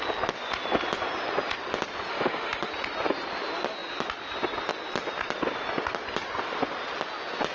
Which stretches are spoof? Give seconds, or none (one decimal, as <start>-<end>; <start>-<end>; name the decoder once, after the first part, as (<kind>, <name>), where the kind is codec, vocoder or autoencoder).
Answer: 2.1-2.7 (autoencoder, DAC-VAE)